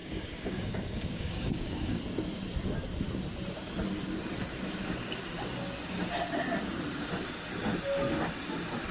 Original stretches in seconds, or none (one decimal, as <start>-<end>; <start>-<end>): 2.0-8.9